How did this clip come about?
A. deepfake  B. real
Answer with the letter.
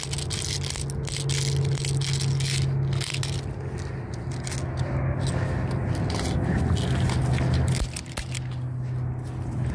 B